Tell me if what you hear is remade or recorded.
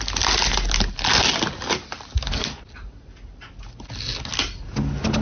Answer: recorded